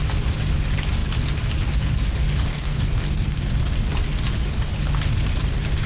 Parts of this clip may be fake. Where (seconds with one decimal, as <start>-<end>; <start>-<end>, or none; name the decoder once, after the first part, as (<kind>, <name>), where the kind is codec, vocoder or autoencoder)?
2.5-3.4 (codec, SNAC)